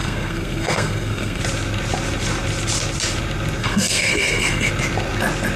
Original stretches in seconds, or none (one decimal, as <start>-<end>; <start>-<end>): 1.4-3.6; 4.7-5.6